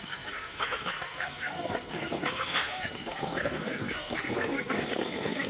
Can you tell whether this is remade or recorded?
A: remade